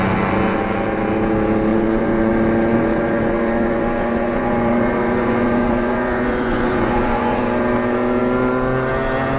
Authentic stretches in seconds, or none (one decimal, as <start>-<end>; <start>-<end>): 0.0-1.7; 2.3-2.7; 7.4-9.4

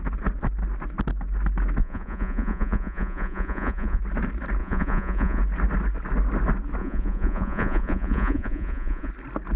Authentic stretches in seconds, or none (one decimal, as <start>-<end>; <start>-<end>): 0.0-1.8; 4.0-4.6; 5.4-6.8; 9.1-9.6

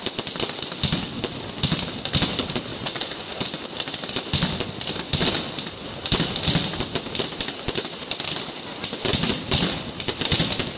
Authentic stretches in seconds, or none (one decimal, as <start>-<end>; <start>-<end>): 0.0-2.7; 3.6-10.8

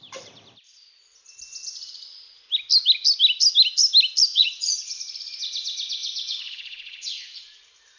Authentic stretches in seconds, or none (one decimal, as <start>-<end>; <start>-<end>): 0.0-4.3; 5.0-6.0; 7.6-8.0

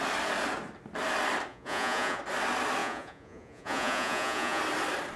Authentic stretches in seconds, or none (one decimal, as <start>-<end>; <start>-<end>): 0.0-1.5; 2.2-2.8; 4.6-5.2

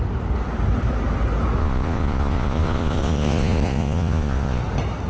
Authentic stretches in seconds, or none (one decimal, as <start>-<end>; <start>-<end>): 0.0-1.6; 4.6-5.1

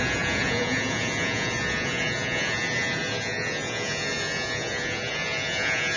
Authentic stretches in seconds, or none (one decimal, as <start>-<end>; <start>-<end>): none

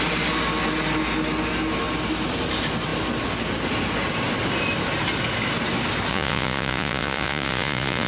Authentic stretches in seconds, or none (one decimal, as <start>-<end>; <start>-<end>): 0.0-6.1